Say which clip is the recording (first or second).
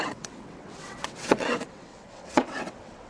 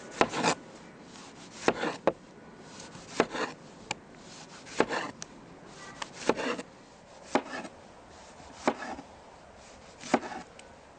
second